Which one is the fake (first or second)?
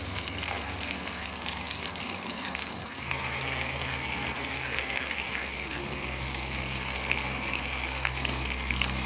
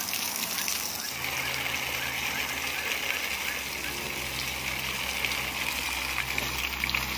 first